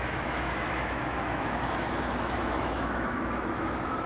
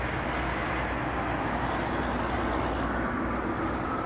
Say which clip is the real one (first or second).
second